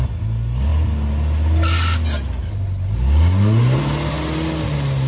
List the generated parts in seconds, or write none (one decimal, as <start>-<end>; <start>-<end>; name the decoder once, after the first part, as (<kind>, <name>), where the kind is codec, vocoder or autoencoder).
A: none